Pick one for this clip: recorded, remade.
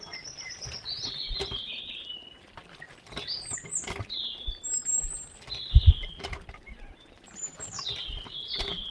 recorded